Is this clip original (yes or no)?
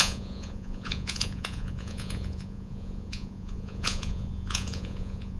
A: no